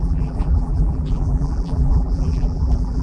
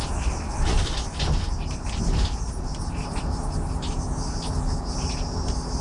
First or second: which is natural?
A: second